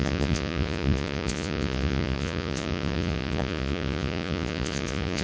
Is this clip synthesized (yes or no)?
yes